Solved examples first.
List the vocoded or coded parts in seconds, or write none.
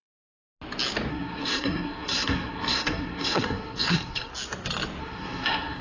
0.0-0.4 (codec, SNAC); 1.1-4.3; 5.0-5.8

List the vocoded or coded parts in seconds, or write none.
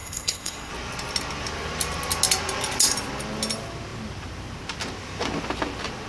0.0-0.7 (codec, SNAC)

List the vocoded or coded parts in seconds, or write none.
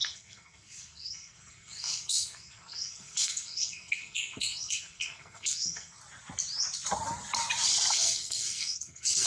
0.0-6.0 (codec, SNAC); 7.9-9.3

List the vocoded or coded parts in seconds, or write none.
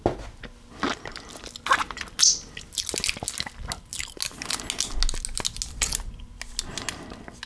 none